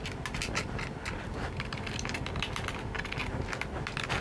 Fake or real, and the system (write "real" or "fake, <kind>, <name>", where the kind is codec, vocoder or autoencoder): real